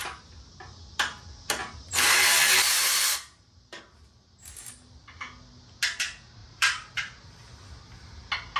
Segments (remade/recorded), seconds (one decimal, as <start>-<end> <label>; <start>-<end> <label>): 0.0-1.6 recorded; 1.6-3.8 remade; 3.8-6.4 recorded; 6.4-7.3 remade; 7.3-8.6 recorded